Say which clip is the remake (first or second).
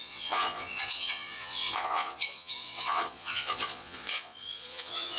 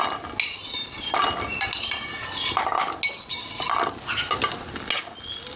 first